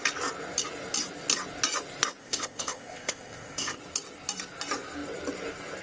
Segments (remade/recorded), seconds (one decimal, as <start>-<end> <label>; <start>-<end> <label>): 0.0-2.2 recorded; 2.2-3.8 remade; 3.8-5.8 recorded